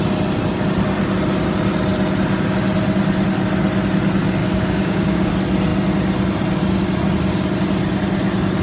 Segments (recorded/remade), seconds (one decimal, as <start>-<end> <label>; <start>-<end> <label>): 0.0-4.4 recorded; 4.4-5.3 remade; 5.3-8.6 recorded